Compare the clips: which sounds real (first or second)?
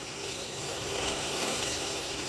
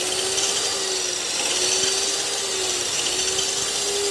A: second